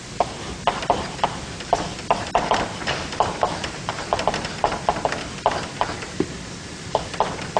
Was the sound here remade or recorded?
remade